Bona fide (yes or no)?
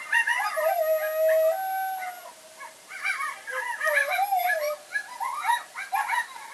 yes